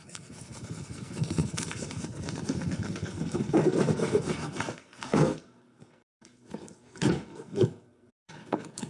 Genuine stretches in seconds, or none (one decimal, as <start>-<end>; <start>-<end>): none